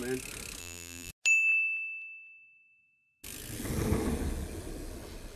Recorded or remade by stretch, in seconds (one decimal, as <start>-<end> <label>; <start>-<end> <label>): 0.0-0.6 recorded; 0.6-1.1 remade; 1.1-5.4 recorded